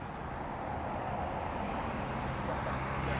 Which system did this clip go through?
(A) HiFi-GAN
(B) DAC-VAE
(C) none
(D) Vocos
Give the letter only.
C